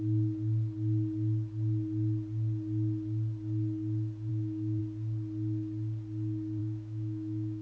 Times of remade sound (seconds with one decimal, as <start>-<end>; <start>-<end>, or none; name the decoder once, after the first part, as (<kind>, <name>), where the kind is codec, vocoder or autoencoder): 4.3-4.8 (autoencoder, DAC-VAE); 6.6-7.6